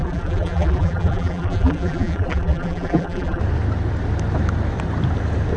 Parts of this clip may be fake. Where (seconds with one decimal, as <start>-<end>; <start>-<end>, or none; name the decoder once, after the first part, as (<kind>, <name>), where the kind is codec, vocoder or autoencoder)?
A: 0.0-3.4 (vocoder, BigVGAN v2)